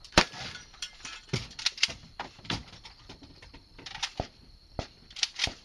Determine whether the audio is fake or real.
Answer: fake